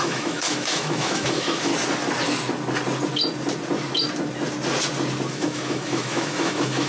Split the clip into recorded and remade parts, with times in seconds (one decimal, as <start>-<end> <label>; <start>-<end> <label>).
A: 0.0-1.7 remade; 1.7-5.3 recorded; 5.3-6.9 remade